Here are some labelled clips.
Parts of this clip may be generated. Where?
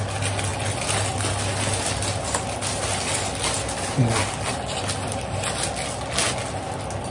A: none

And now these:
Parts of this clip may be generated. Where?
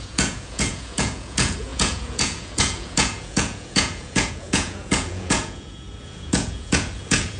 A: 0.0-7.4 (vocoder, Vocos)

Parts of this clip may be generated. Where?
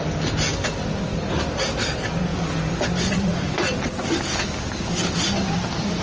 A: none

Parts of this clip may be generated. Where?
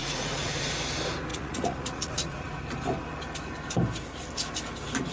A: 0.0-0.7 (vocoder, Vocos); 1.3-2.6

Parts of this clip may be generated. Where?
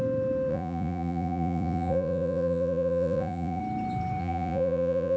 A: 0.5-3.6 (vocoder, Vocos); 4.2-5.2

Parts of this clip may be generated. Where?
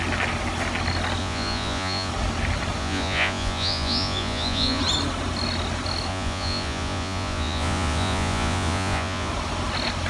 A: 1.2-2.1 (vocoder, Vocos); 2.8-4.8; 6.1-9.3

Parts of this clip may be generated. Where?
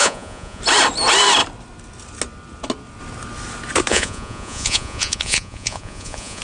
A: 0.0-0.6 (vocoder, Vocos); 3.9-6.4